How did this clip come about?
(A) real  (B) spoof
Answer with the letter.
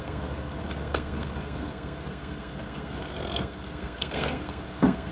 B